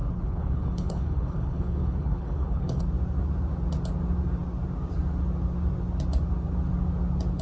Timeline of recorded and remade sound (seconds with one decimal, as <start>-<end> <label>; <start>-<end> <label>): 0.0-2.8 remade; 2.8-7.4 recorded